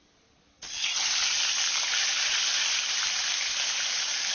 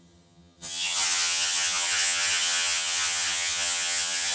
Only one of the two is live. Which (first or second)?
first